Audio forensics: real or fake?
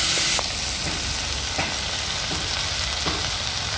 real